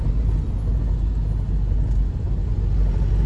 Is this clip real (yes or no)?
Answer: yes